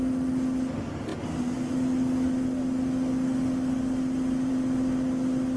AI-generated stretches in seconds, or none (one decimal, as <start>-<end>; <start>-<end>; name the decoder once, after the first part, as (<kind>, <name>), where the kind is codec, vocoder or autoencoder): none